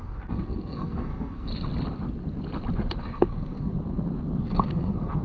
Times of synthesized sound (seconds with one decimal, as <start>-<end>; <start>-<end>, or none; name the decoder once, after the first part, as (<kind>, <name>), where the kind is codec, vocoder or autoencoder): 0.0-1.5 (codec, SNAC); 3.0-3.7; 4.4-5.2

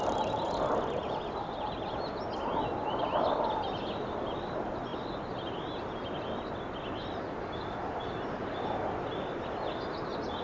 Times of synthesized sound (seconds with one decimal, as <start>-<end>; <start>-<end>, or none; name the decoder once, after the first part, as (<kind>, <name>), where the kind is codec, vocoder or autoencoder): none

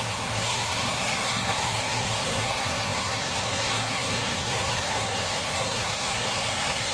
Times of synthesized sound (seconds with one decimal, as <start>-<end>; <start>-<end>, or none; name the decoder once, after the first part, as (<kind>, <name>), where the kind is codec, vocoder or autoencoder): 0.0-6.9 (codec, SNAC)

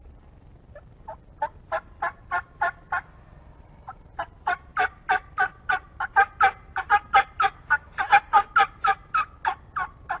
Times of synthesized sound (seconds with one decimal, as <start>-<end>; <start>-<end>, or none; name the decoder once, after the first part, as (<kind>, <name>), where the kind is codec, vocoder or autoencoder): none